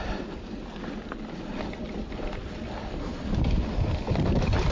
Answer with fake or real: fake